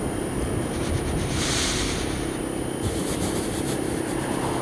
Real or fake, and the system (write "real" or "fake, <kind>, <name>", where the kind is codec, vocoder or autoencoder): real